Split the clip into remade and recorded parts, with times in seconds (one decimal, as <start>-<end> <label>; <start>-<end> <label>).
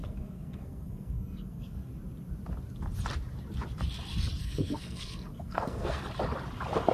0.0-1.9 remade; 1.9-4.4 recorded; 4.4-6.0 remade; 6.0-6.9 recorded